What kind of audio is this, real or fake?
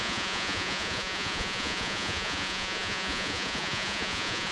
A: fake